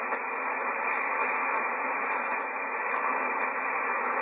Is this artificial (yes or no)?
no